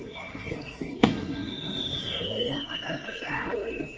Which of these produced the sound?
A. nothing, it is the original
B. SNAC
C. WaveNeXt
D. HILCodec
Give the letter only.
B